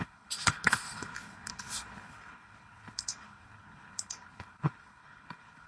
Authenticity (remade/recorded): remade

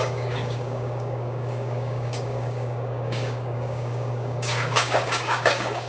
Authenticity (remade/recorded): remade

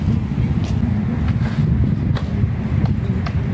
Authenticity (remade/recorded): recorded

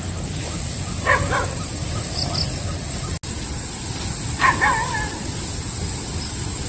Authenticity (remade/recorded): recorded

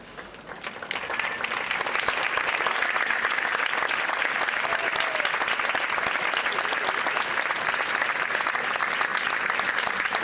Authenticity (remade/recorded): recorded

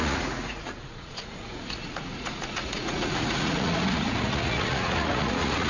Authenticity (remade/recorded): remade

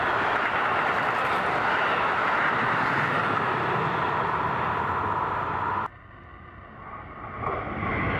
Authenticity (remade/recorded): recorded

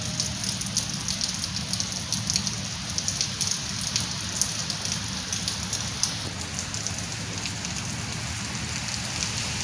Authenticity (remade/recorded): recorded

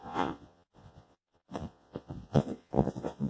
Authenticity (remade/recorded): remade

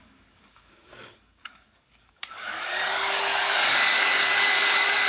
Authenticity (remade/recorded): remade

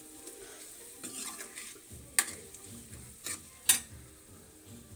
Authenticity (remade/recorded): recorded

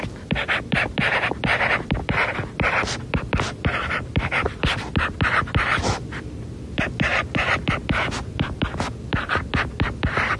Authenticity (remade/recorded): remade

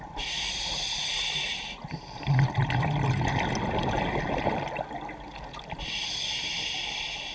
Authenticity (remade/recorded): recorded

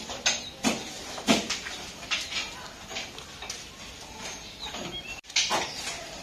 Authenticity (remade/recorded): recorded